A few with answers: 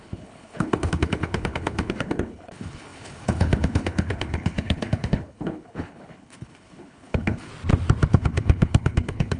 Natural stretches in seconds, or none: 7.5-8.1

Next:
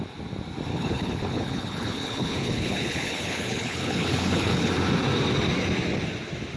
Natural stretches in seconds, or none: 0.0-0.7; 4.7-6.6

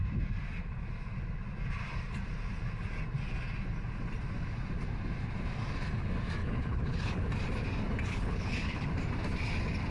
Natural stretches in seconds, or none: 0.0-6.4; 7.2-8.1; 8.9-9.9